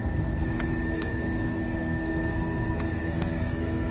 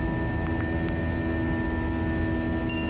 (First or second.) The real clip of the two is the second